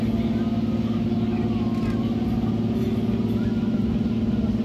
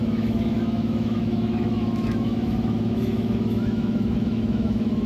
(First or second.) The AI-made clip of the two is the second